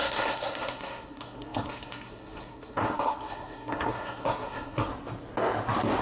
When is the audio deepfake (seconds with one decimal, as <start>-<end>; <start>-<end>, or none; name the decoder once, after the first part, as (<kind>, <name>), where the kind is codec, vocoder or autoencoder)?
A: 0.0-4.9 (codec, SNAC)